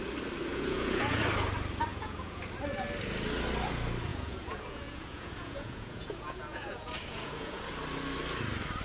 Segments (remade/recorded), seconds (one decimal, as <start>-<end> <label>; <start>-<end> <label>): 0.0-0.5 recorded; 0.5-1.2 remade; 1.2-1.9 recorded; 1.9-2.4 remade; 2.4-4.1 recorded; 4.1-7.7 remade; 7.7-8.8 recorded